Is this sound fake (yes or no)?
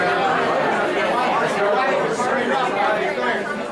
no